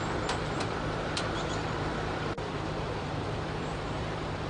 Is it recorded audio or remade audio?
remade